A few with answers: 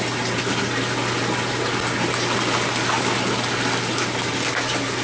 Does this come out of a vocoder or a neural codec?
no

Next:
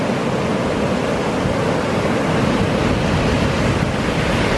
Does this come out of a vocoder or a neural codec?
no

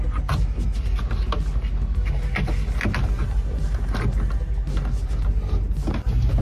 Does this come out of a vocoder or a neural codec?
no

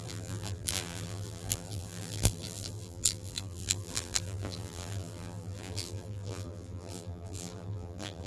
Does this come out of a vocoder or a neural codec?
yes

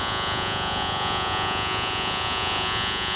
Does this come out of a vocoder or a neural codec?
yes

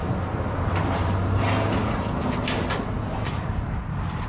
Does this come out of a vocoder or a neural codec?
no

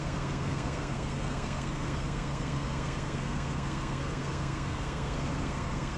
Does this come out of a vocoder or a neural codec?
yes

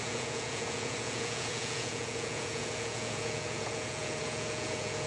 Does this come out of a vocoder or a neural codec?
yes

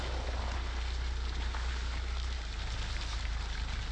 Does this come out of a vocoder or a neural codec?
no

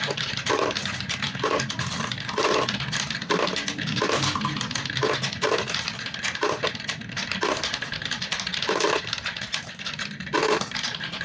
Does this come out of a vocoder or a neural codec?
no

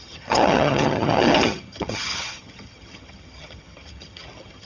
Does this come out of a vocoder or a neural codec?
yes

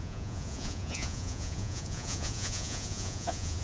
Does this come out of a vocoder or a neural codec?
yes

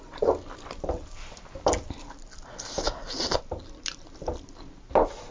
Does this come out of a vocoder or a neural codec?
no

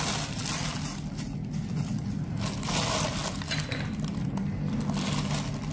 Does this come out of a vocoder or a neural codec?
no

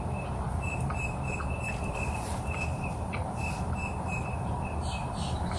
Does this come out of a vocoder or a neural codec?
yes